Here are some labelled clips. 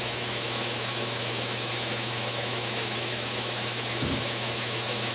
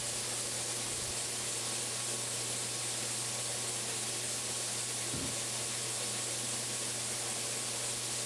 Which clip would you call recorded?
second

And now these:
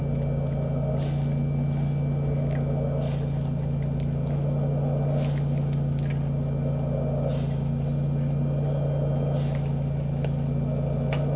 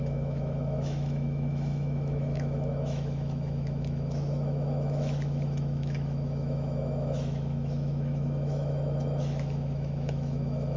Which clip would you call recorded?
first